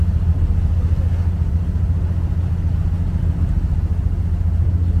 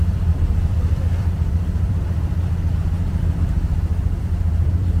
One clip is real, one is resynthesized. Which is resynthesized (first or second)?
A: second